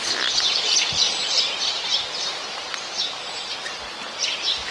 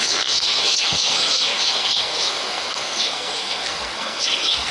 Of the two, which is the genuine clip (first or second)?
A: first